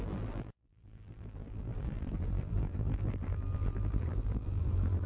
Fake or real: fake